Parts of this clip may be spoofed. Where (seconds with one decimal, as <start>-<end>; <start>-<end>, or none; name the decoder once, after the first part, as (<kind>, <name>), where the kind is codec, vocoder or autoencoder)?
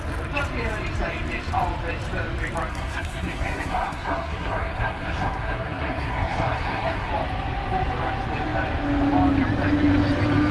2.7-7.1 (codec, SNAC)